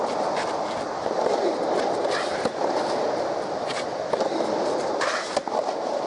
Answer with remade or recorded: recorded